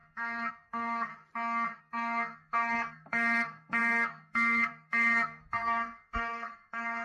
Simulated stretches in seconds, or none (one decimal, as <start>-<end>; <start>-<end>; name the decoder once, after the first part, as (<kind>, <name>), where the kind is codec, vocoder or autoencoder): 0.0-1.1 (codec, SNAC); 1.8-7.0